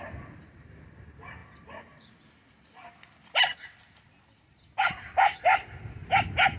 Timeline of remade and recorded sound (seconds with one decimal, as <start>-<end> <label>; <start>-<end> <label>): 0.0-6.6 recorded